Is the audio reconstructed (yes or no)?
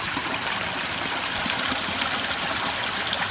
no